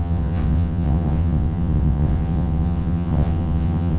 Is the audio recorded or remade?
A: remade